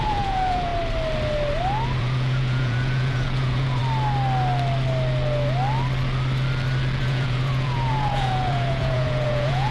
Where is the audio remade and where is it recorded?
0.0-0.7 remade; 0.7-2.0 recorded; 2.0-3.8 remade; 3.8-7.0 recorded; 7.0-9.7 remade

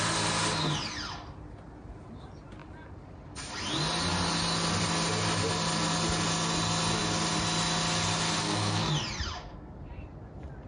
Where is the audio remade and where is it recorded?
0.0-8.4 recorded; 8.4-8.9 remade; 8.9-10.7 recorded

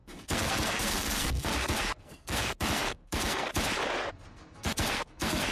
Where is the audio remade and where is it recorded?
0.0-3.5 remade; 3.5-4.1 recorded; 4.1-5.5 remade

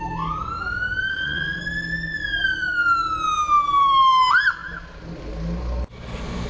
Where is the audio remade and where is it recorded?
0.0-1.1 recorded; 1.1-1.6 remade; 1.6-6.5 recorded

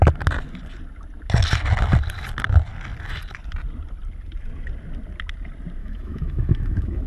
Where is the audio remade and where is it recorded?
0.0-5.8 recorded; 5.8-7.1 remade